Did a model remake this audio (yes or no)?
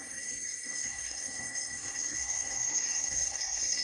yes